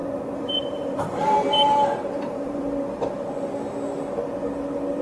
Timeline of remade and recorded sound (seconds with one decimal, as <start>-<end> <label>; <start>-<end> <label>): 0.0-2.6 remade; 2.6-5.0 recorded